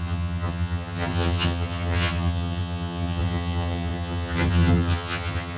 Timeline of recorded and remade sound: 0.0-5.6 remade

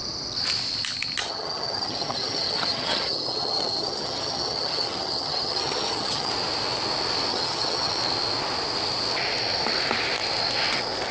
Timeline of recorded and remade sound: 0.0-1.2 recorded; 1.2-6.3 remade; 6.3-7.3 recorded; 7.3-7.9 remade; 7.9-11.1 recorded

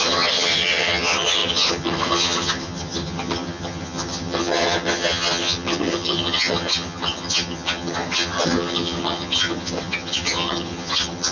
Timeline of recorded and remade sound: 0.0-11.3 remade

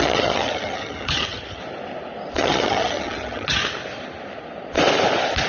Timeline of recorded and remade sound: 0.0-1.6 remade; 1.6-2.4 recorded; 2.4-3.6 remade; 3.6-5.5 recorded